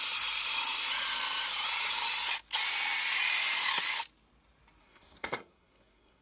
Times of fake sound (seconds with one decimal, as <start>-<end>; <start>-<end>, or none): 4.8-6.2